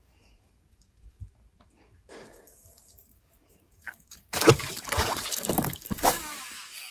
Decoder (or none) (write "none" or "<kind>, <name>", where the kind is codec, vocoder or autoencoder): codec, DAC